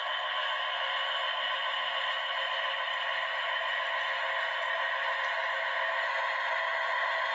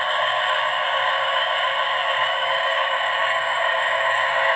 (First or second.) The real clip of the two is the first